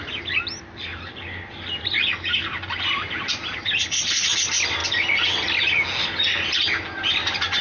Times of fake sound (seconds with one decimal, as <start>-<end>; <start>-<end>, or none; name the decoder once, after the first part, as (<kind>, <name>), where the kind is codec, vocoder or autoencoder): none